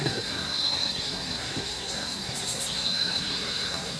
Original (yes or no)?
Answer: no